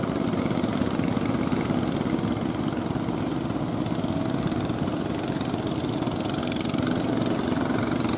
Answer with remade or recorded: recorded